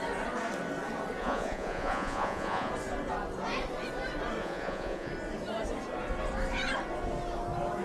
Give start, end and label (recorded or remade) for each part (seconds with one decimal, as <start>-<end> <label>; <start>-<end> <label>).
0.0-1.2 recorded; 1.2-2.7 remade; 2.7-4.4 recorded; 4.4-5.1 remade; 5.1-7.8 recorded

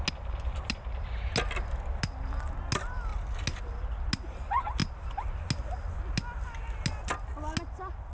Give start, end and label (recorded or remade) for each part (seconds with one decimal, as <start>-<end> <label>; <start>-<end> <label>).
0.0-8.1 recorded